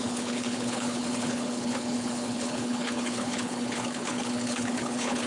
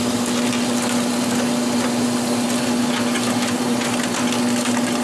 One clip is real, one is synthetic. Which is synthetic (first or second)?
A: first